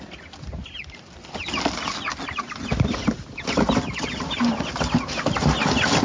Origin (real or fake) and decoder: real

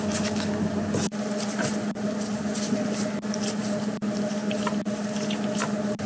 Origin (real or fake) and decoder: real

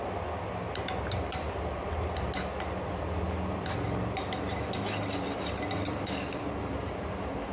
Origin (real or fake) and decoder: real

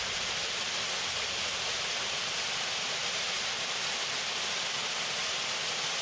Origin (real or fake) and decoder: real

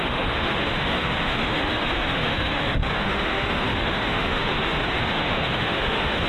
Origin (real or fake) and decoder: fake, autoencoder, DAC-VAE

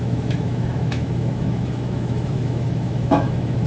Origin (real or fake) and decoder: fake, autoencoder, DAC-VAE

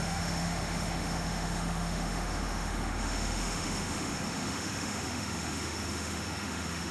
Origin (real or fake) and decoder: fake, autoencoder, DAC-VAE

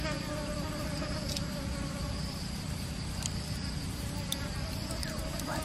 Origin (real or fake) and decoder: real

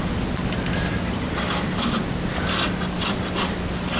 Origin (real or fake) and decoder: real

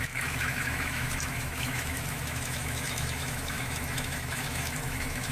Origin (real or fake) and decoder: fake, autoencoder, DAC-VAE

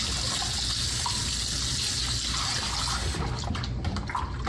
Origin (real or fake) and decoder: real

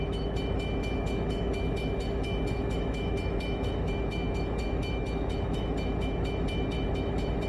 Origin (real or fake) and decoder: fake, autoencoder, DAC-VAE